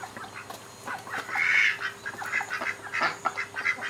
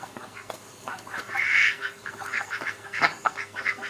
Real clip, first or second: first